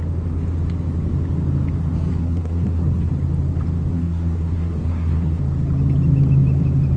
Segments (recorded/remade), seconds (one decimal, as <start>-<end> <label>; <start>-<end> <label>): 0.0-2.1 recorded; 2.1-3.1 remade; 3.1-3.9 recorded; 3.9-5.4 remade; 5.4-7.0 recorded

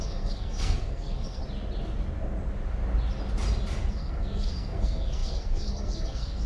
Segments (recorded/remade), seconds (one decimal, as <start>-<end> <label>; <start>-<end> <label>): 0.0-1.4 remade; 1.4-3.9 recorded; 3.9-6.5 remade

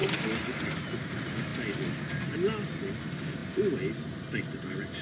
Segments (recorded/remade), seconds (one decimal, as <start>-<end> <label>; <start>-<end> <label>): 0.0-5.0 recorded

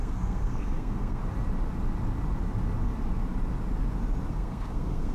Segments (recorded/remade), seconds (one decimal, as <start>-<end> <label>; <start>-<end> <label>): 0.0-1.2 remade; 1.2-4.3 recorded; 4.3-5.1 remade

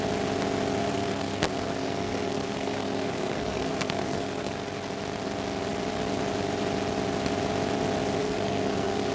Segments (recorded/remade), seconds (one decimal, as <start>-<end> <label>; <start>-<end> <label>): 0.0-0.8 recorded; 0.8-4.5 remade; 4.5-8.2 recorded; 8.2-9.1 remade